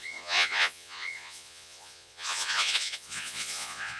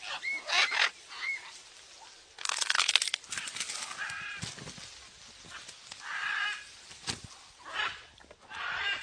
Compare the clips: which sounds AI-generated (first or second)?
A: first